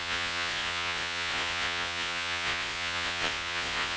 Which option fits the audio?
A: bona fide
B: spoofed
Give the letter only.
B